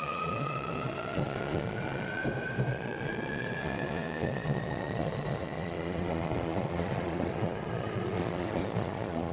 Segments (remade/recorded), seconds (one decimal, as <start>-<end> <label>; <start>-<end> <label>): 0.0-2.2 remade; 2.2-2.7 recorded; 2.7-9.3 remade